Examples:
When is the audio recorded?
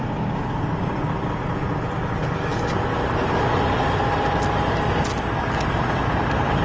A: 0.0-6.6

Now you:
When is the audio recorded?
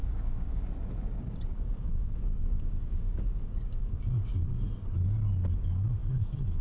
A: 0.6-1.5; 4.3-6.0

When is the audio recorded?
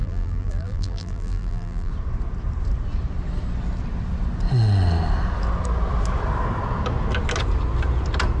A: 1.9-8.4